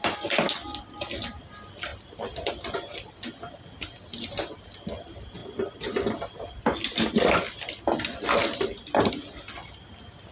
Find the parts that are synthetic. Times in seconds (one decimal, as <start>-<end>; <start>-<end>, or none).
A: none